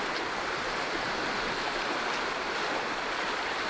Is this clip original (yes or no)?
no